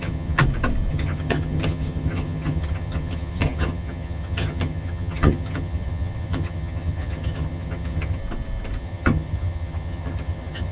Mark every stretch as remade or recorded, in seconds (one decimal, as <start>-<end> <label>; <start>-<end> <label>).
0.0-0.4 remade; 0.4-0.9 recorded; 0.9-8.2 remade; 8.2-8.8 recorded; 8.8-10.7 remade